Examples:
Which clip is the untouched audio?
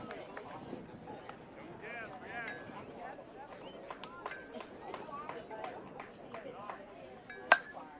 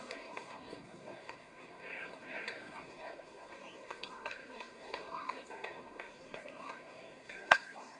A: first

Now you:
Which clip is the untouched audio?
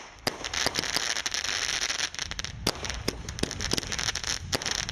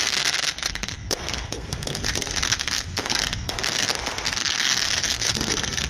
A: first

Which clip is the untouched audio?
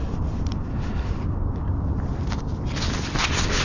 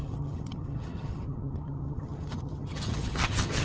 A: first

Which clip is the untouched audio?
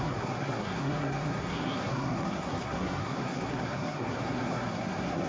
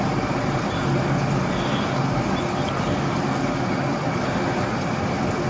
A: second